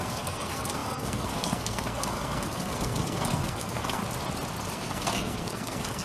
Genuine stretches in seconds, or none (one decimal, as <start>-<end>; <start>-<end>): 4.0-4.7